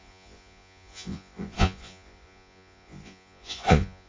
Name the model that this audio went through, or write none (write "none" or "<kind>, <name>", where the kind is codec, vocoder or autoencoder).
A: vocoder, Vocos